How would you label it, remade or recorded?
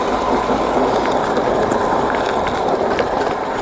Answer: recorded